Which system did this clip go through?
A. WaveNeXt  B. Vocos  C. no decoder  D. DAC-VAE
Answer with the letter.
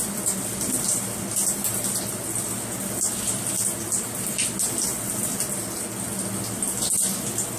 C